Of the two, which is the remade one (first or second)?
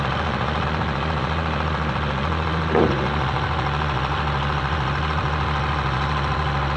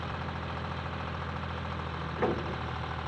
first